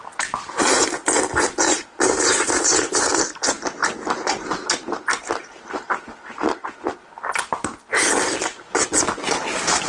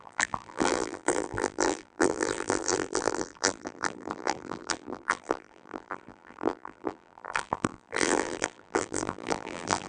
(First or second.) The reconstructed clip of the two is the second